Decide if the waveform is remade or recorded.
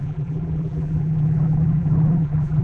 remade